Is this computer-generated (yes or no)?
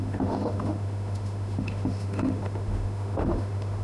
yes